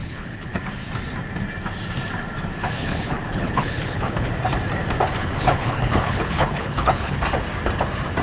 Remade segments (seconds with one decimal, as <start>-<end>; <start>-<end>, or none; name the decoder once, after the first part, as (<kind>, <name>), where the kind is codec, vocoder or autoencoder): 0.0-0.6 (codec, HILCodec); 2.6-4.3; 5.2-7.2